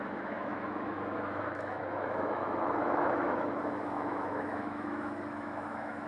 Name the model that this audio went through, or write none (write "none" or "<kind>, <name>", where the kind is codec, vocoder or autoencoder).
autoencoder, DAC-VAE